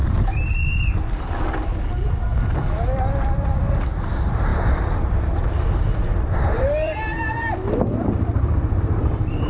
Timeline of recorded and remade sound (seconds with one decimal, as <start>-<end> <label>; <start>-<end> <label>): 0.0-2.3 recorded; 2.3-3.8 remade; 3.8-4.5 recorded; 4.5-8.8 remade; 8.8-9.5 recorded